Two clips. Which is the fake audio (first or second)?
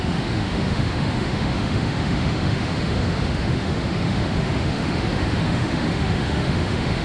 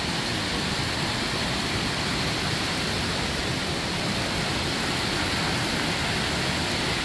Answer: first